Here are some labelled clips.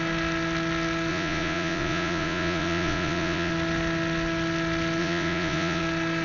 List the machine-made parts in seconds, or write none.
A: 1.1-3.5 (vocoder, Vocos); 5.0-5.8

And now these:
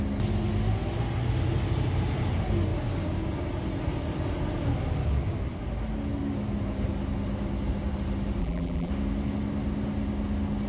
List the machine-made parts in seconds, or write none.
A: 8.4-8.9 (vocoder, BigVGAN v2)

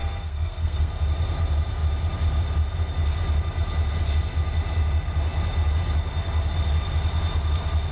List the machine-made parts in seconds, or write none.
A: 0.0-0.9 (codec, SNAC)

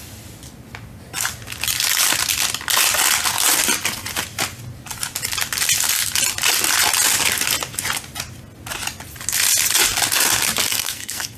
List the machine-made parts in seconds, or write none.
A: 10.7-11.4 (codec, SNAC)